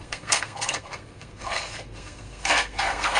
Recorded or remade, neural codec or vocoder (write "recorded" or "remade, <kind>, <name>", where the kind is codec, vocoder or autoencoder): remade, codec, SNAC